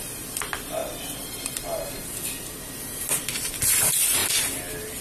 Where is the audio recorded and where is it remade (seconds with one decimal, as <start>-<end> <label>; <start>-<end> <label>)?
0.0-5.0 recorded